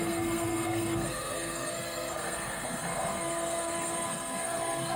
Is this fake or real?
fake